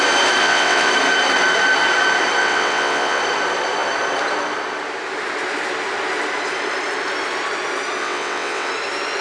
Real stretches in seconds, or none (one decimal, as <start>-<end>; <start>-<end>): 0.0-0.4; 0.9-2.4; 3.2-8.0; 8.7-9.2